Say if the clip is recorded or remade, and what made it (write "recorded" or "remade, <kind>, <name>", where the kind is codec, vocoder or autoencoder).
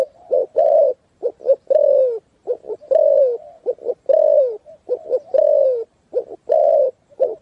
remade, vocoder, BigVGAN v2